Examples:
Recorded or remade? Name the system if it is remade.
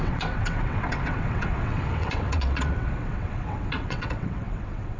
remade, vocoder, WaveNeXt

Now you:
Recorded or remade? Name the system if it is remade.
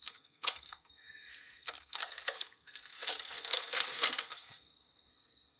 remade, codec, SNAC